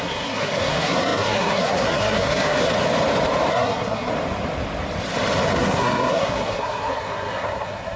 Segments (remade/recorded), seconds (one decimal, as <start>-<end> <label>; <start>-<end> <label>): 0.0-2.7 remade; 2.7-3.5 recorded; 3.5-4.1 remade; 4.1-5.5 recorded; 5.5-8.0 remade